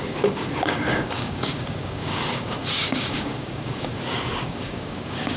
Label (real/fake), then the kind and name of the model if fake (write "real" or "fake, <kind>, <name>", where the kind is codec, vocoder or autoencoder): fake, codec, DAC